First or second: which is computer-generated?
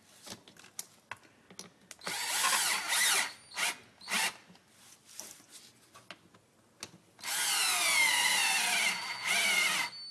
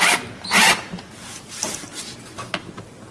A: second